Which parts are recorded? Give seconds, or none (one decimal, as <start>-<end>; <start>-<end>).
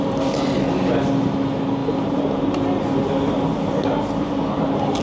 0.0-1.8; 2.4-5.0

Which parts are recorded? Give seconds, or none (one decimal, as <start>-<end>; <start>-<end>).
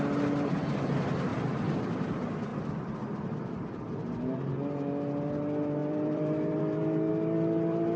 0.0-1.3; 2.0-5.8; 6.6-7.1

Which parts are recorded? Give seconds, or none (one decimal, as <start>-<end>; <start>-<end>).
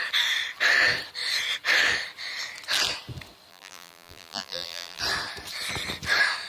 0.0-3.5; 5.0-6.5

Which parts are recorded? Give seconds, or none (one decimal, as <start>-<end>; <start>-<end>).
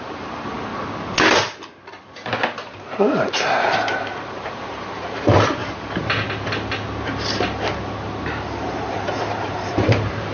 0.7-2.7; 5.6-8.2